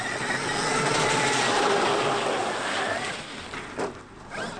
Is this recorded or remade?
recorded